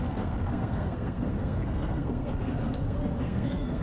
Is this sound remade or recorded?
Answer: remade